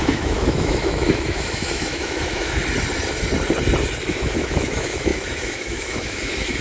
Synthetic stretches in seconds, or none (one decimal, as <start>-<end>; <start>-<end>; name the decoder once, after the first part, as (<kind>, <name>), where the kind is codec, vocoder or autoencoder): 0.0-2.6 (autoencoder, DAC-VAE); 4.1-6.6